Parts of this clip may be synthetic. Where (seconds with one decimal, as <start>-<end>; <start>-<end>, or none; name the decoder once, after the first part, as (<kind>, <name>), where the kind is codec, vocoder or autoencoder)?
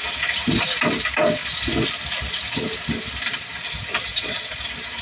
4.1-4.6 (vocoder, Vocos)